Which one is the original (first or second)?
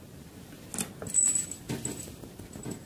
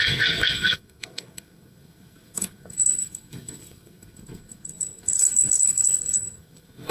first